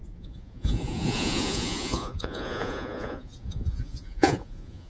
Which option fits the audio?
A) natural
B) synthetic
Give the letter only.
B